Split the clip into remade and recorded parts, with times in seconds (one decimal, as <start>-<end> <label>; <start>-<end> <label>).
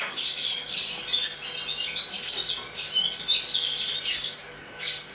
0.0-1.0 remade; 1.0-4.1 recorded; 4.1-5.1 remade